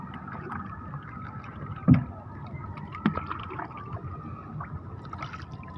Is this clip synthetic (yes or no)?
no